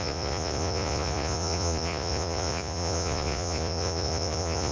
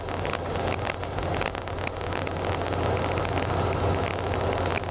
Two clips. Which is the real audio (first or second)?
second